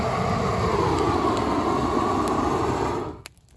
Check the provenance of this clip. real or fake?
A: real